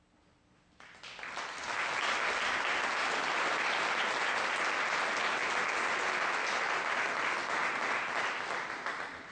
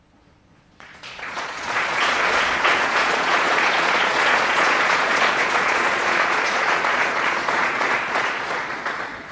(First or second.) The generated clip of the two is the second